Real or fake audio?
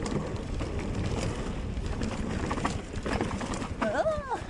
real